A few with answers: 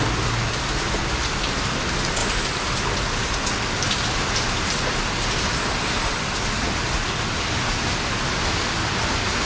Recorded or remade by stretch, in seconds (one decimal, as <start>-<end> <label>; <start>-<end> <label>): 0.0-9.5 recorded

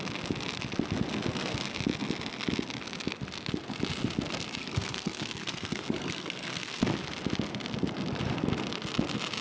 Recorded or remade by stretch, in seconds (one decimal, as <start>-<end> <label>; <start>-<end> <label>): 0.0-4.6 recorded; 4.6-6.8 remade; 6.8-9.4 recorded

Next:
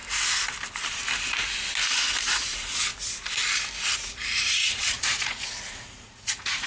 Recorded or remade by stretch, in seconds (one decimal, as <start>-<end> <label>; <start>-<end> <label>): 0.0-2.2 recorded; 2.2-2.9 remade; 2.9-4.0 recorded; 4.0-6.7 remade

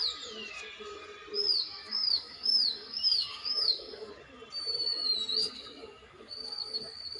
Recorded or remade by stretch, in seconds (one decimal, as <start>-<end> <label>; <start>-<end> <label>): 0.0-1.8 recorded; 1.8-4.1 remade; 4.1-5.4 recorded; 5.4-7.2 remade

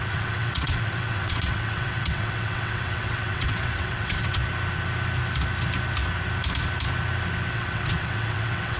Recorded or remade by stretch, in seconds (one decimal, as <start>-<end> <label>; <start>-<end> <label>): 0.0-4.4 remade; 4.4-7.5 recorded; 7.5-8.8 remade